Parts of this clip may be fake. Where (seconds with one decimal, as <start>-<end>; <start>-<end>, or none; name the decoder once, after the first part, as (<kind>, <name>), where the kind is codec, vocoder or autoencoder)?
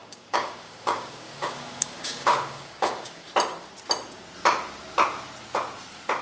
0.0-3.3 (codec, DAC)